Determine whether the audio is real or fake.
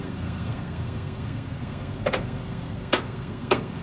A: fake